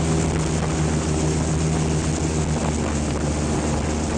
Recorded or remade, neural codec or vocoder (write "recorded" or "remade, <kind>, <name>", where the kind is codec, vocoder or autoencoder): recorded